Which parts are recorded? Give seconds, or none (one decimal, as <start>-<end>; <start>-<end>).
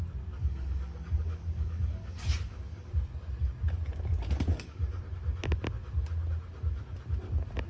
0.0-0.4; 2.9-4.5; 5.0-7.7